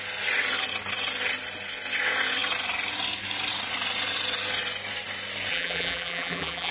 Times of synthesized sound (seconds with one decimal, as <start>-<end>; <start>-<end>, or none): 5.5-6.7